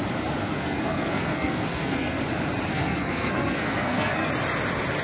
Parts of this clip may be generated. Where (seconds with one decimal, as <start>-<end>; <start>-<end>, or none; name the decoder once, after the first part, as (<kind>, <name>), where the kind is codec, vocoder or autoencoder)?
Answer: 0.4-2.2 (codec, SNAC); 2.7-4.3